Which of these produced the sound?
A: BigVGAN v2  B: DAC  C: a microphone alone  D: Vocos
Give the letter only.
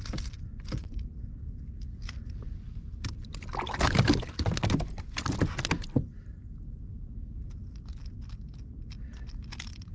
C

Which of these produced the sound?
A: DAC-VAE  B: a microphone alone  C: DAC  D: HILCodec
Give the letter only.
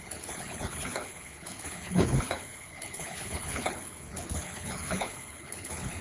D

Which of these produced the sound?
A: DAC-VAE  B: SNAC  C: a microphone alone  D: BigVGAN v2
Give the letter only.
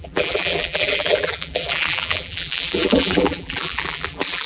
D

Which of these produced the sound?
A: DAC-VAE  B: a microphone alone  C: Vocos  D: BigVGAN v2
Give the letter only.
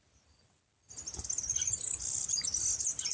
B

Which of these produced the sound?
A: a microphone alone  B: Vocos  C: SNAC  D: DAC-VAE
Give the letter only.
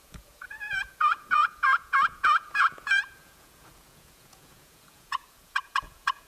B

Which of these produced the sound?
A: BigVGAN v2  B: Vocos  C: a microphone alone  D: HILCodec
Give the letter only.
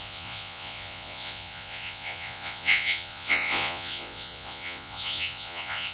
B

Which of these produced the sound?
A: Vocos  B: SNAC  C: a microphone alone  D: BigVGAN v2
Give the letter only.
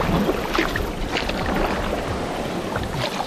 C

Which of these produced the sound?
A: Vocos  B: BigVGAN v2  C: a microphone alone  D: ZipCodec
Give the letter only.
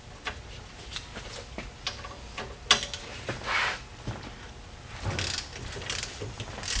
C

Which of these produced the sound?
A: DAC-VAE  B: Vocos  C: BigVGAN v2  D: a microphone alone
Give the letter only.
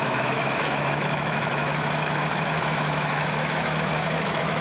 A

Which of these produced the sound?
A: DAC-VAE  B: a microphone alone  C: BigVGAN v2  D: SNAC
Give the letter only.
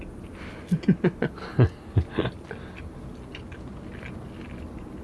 B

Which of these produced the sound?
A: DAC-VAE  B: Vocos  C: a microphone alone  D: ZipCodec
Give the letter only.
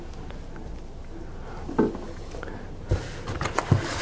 C